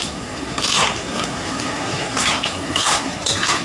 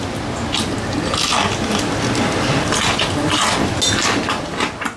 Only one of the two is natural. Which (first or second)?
second